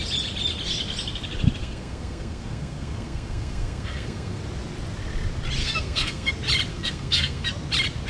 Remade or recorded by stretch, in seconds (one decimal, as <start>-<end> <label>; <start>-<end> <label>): 0.0-1.6 recorded; 1.6-4.4 remade; 4.4-5.6 recorded; 5.6-6.3 remade; 6.3-6.7 recorded; 6.7-7.5 remade; 7.5-8.1 recorded